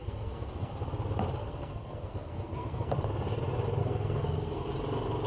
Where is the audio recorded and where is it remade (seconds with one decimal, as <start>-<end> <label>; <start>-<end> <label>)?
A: 0.0-0.7 remade; 0.7-1.4 recorded; 1.4-2.9 remade; 2.9-3.8 recorded; 3.8-4.7 remade; 4.7-5.3 recorded